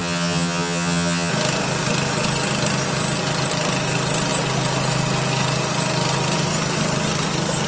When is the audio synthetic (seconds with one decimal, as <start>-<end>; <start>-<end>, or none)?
0.0-1.3